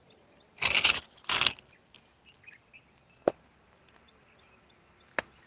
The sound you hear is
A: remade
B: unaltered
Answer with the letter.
B